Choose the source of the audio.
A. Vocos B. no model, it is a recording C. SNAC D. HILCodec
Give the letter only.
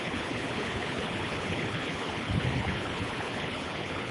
D